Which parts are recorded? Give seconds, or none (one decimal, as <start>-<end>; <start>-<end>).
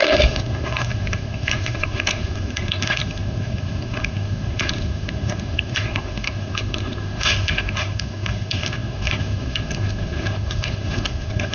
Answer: none